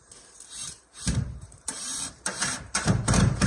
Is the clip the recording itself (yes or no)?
no